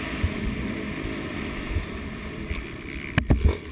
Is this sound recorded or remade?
recorded